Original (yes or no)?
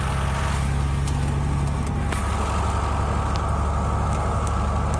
yes